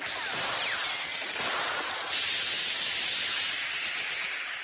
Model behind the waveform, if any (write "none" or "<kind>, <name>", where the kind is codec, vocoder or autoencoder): none